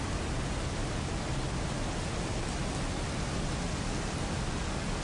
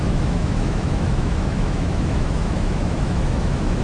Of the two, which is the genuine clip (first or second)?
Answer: first